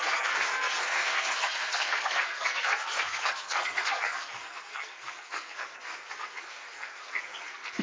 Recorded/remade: remade